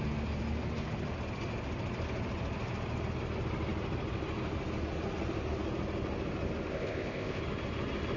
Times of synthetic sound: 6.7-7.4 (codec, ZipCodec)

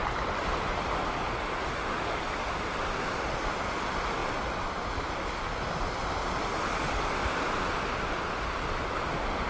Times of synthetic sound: none

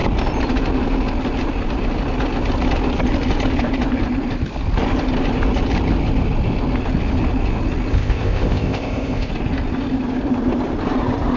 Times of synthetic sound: 7.9-9.3 (codec, ZipCodec)

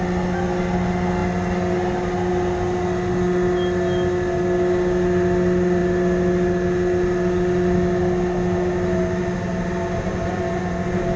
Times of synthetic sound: none